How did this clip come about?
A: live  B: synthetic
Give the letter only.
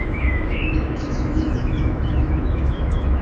B